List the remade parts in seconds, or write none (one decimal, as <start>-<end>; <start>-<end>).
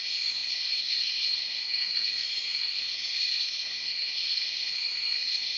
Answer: 0.0-5.6